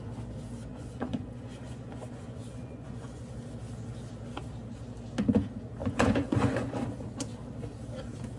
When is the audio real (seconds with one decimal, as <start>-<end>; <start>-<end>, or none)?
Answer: 0.0-0.7; 3.3-5.8; 6.8-8.4